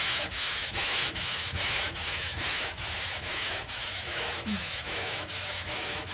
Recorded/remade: remade